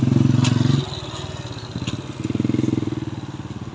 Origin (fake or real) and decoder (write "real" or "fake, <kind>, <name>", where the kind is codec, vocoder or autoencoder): real